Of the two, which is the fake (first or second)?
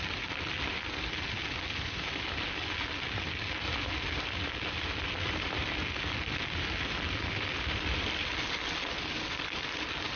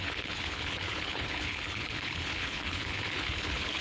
second